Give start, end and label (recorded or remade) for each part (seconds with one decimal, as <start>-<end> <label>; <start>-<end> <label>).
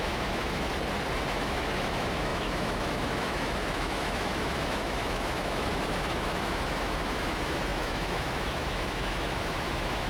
0.0-0.7 remade; 0.7-1.3 recorded; 1.3-10.1 remade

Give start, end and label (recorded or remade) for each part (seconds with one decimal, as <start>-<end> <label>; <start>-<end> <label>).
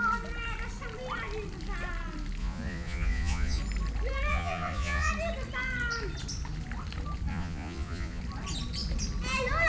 0.0-2.4 recorded; 2.4-3.6 remade; 3.6-4.3 recorded; 4.3-5.1 remade; 5.1-7.3 recorded; 7.3-8.2 remade; 8.2-9.7 recorded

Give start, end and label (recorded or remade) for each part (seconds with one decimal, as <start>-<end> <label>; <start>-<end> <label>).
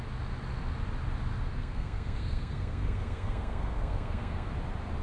0.0-1.5 recorded; 1.5-4.5 remade; 4.5-5.0 recorded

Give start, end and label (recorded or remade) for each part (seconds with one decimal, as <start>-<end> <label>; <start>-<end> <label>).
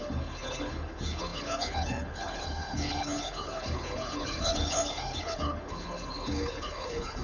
0.0-7.2 remade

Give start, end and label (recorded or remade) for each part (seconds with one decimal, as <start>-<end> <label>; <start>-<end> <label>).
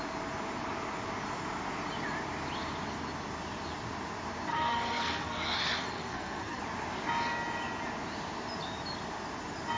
0.0-4.5 recorded; 4.5-6.6 remade; 6.6-9.8 recorded